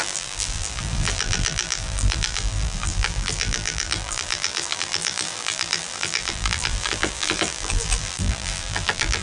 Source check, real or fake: fake